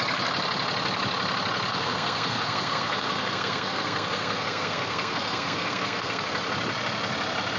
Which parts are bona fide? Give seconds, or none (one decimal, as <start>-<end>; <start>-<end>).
0.0-1.7; 6.2-7.6